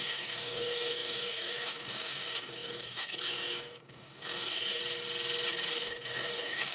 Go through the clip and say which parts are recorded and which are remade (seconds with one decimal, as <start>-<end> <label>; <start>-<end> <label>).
0.0-4.8 remade; 4.8-5.7 recorded; 5.7-6.7 remade